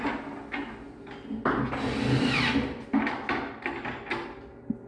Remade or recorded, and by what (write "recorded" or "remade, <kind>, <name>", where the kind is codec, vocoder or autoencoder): recorded